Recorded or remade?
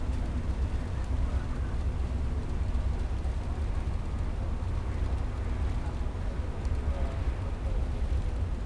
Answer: recorded